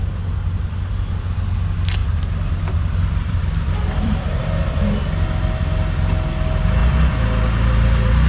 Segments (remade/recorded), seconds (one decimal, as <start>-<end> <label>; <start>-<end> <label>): 0.0-2.0 recorded; 2.0-4.6 remade; 4.6-8.3 recorded